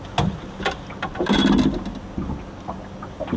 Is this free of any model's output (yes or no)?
yes